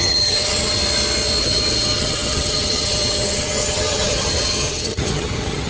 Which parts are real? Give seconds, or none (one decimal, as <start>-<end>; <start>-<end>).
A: 0.8-1.4